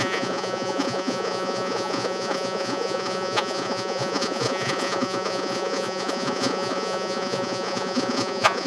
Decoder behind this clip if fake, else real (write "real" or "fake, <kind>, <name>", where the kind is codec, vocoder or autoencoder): fake, vocoder, Vocos